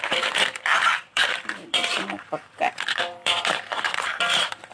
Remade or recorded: remade